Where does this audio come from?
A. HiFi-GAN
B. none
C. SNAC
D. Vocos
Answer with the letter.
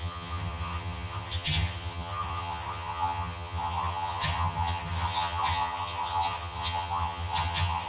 A